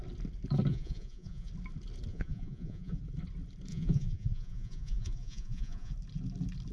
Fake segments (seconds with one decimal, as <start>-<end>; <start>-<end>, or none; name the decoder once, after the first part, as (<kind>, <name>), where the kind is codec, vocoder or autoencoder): 0.7-1.5 (vocoder, Vocos); 2.1-3.0; 3.7-5.9